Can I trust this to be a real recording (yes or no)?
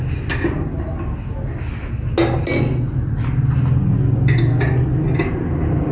yes